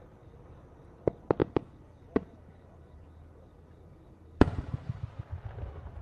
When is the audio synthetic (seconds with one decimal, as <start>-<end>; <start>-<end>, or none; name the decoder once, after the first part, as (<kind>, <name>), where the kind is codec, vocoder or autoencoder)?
1.4-5.0 (vocoder, BigVGAN v2)